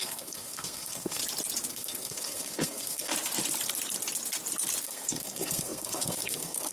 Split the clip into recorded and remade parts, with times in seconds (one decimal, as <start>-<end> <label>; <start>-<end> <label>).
0.0-1.2 remade; 1.2-1.7 recorded; 1.7-3.1 remade; 3.1-4.8 recorded; 4.8-6.7 remade